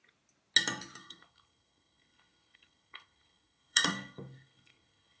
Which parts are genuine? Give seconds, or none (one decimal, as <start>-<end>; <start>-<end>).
0.0-1.0